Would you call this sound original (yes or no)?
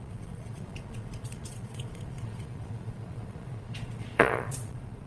no